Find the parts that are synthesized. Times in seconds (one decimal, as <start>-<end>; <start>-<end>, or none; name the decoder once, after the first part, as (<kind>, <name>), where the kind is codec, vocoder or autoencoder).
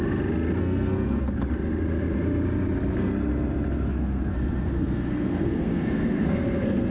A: 0.6-1.2 (codec, SNAC); 3.9-6.9